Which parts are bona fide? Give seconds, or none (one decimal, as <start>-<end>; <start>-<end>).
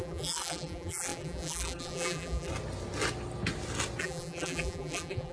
2.5-4.0